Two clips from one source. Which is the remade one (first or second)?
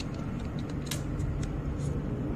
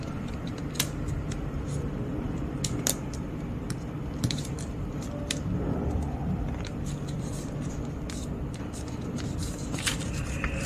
second